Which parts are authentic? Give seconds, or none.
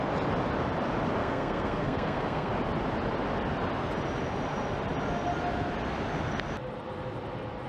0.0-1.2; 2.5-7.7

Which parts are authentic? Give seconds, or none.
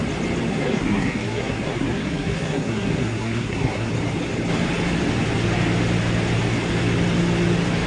0.0-0.5; 3.9-7.9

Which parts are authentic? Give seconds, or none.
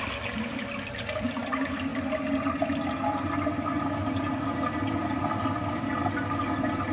0.0-6.9